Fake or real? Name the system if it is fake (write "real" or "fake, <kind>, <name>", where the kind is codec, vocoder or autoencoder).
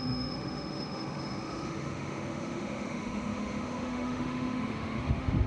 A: fake, autoencoder, DAC-VAE